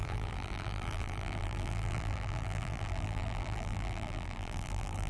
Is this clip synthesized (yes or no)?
yes